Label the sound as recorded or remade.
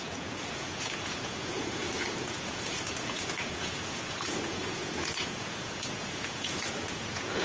remade